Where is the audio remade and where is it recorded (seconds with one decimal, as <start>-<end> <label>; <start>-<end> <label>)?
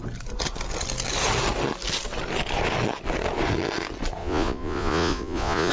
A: 0.0-4.2 recorded; 4.2-5.7 remade